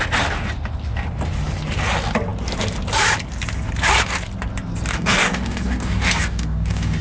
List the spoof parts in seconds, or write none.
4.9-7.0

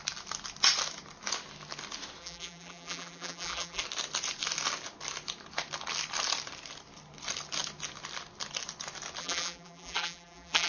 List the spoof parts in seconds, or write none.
2.2-3.8; 9.2-10.7

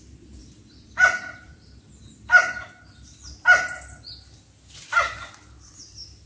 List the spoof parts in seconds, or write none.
0.4-3.7

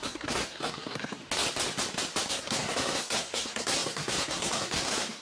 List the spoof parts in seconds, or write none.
0.0-1.2; 2.3-5.2